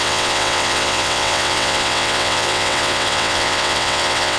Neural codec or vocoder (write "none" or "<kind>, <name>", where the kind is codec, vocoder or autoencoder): vocoder, WaveNeXt